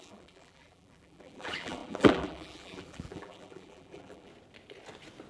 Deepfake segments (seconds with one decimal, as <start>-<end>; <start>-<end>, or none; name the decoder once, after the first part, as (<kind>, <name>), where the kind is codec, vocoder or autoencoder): 0.0-4.3 (vocoder, BigVGAN v2)